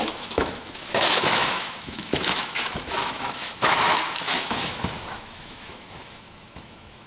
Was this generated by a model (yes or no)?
yes